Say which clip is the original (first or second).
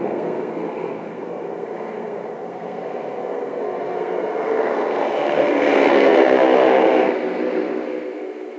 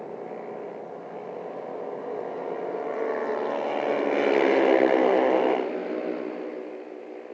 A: second